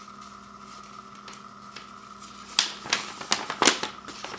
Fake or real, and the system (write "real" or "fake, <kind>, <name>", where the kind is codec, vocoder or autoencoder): real